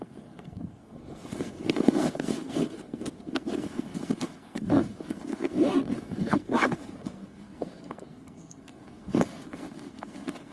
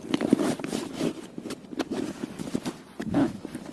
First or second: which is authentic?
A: second